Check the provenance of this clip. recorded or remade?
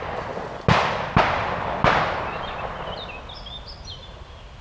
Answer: recorded